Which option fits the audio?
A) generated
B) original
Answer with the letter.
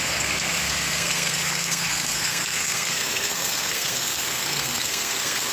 A